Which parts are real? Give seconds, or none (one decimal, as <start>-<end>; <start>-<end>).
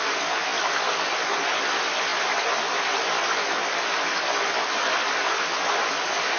0.0-6.4